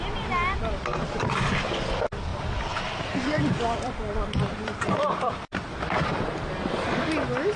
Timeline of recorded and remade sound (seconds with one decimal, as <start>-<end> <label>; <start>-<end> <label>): 0.0-2.3 recorded; 2.3-6.5 remade; 6.5-7.6 recorded